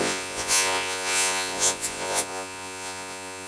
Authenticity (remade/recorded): remade